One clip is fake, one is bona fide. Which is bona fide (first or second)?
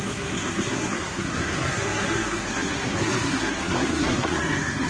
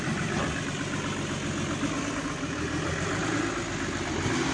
second